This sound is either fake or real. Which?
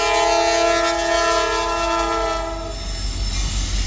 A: real